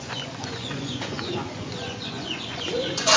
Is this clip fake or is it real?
fake